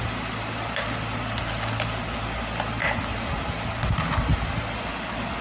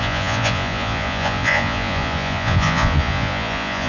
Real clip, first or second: first